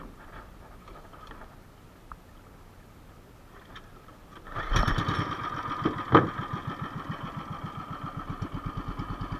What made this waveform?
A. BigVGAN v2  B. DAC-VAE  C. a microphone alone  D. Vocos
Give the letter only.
C